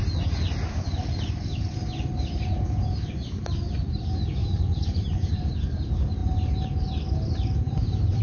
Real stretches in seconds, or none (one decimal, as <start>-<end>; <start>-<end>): 0.0-4.4; 5.3-6.2